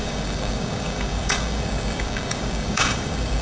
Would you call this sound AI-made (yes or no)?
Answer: yes